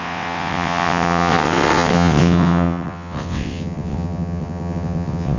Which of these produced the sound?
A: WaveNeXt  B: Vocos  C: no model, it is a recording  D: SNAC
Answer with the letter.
A